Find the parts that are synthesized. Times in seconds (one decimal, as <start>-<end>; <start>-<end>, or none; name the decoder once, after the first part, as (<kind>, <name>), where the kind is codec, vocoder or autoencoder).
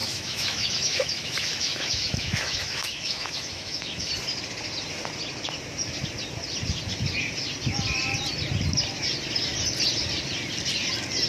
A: 0.0-4.1 (autoencoder, DAC-VAE)